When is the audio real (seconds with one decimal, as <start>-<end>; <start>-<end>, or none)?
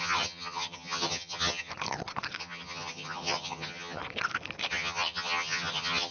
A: 1.7-2.4; 4.0-4.7